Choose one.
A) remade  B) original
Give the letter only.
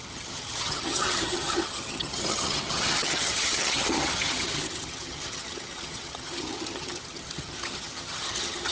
A